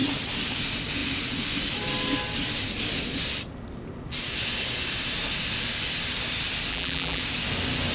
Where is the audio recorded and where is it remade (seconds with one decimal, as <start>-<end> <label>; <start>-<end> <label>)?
0.0-6.7 recorded; 6.7-7.2 remade; 7.2-7.9 recorded

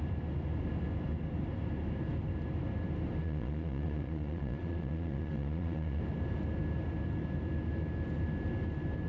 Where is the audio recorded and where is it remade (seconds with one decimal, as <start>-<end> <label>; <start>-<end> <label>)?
0.0-3.2 recorded; 3.2-6.0 remade; 6.0-9.1 recorded